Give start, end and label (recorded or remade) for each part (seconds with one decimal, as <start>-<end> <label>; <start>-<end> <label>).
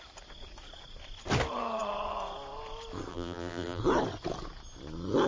0.0-3.1 recorded; 3.1-3.8 remade; 3.8-5.3 recorded